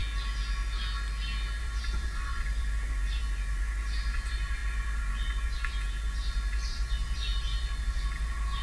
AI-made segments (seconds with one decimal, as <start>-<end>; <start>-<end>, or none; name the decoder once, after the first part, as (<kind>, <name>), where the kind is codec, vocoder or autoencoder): 1.6-8.6 (vocoder, Vocos)